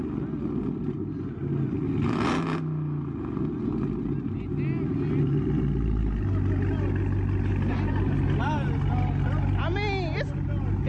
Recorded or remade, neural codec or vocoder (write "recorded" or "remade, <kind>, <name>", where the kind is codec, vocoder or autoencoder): recorded